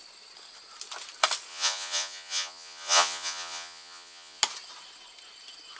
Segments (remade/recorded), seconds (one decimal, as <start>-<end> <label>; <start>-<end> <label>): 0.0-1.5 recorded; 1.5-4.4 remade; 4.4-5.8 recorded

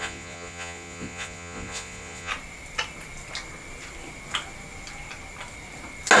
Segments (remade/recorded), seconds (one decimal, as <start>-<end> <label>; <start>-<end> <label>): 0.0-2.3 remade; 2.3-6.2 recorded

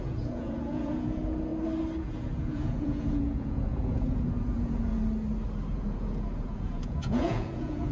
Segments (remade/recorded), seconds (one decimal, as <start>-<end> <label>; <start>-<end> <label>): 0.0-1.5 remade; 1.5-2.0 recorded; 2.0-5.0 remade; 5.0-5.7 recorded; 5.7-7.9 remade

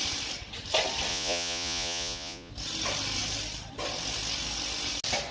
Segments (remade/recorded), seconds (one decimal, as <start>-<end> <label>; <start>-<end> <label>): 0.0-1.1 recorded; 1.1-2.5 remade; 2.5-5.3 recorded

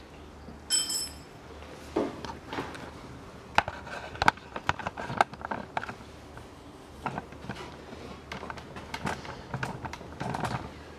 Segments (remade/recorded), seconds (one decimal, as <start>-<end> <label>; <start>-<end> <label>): 0.0-11.0 recorded